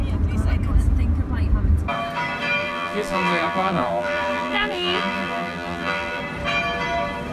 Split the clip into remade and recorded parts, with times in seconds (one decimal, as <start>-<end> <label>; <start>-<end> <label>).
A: 0.0-2.6 recorded; 2.6-6.2 remade; 6.2-7.3 recorded